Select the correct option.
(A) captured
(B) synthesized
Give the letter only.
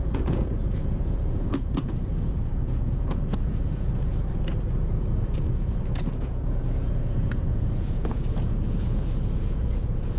B